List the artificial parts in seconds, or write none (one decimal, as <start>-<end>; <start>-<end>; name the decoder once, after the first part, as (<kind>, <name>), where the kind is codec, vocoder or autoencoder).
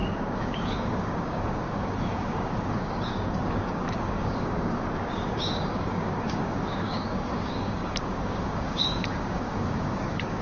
0.0-10.4 (codec, DAC)